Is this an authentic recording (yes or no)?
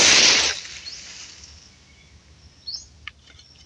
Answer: yes